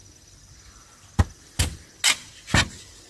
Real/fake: real